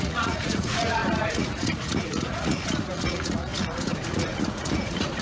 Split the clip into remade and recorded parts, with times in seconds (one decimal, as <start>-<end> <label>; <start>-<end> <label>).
0.0-5.2 remade